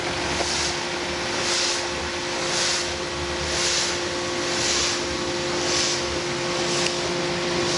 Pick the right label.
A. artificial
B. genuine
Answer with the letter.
B